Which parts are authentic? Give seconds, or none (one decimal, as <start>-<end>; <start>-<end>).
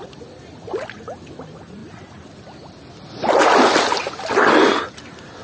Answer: 0.0-5.4